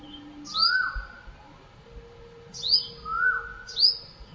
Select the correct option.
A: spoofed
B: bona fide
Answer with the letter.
B